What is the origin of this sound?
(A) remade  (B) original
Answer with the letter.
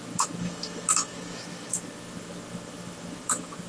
A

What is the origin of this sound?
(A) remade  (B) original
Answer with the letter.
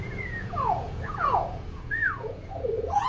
A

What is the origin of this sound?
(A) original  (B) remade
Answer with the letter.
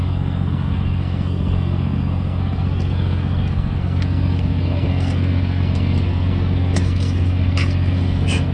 B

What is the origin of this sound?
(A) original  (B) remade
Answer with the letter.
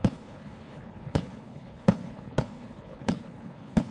B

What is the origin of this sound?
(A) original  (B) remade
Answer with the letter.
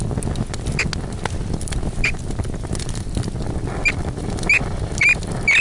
A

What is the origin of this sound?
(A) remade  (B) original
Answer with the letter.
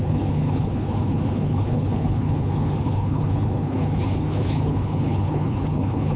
A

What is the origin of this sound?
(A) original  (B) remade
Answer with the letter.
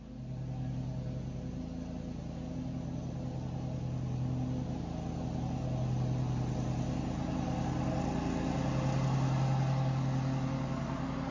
A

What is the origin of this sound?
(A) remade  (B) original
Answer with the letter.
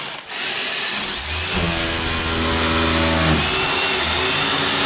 B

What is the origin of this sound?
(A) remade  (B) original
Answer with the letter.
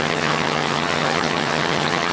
A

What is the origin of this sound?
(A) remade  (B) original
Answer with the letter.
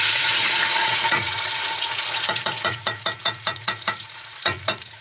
A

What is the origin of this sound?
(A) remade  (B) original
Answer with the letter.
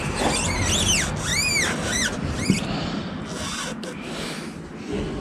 B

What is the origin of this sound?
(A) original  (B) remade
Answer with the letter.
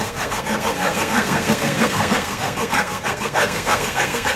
B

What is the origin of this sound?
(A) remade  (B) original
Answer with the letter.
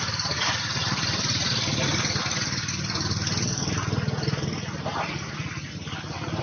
B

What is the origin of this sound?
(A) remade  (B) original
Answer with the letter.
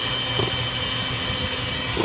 B